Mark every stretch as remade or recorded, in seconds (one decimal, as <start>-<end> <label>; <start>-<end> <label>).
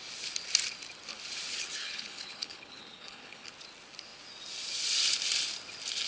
0.0-1.8 recorded; 1.8-3.5 remade; 3.5-6.1 recorded